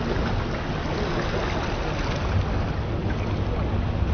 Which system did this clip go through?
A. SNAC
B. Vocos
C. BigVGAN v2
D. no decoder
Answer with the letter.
D